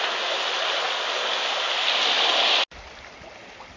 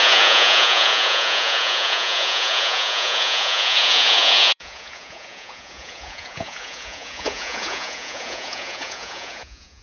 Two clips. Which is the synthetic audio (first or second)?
second